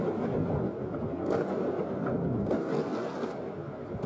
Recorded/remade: recorded